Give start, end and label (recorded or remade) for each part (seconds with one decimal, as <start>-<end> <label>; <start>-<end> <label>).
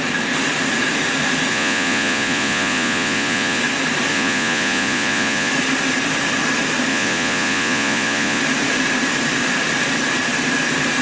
0.0-1.5 recorded; 1.5-3.6 remade; 3.6-4.1 recorded; 4.1-5.5 remade; 5.5-6.9 recorded; 6.9-8.4 remade; 8.4-11.0 recorded